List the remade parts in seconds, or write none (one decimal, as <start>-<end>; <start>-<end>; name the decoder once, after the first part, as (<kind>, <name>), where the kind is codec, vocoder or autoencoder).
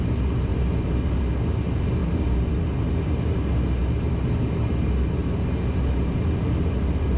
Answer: none